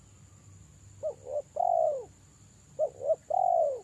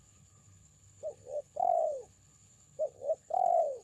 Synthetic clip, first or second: second